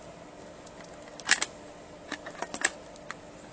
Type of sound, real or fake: real